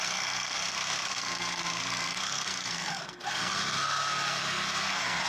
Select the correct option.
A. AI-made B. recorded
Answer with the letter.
A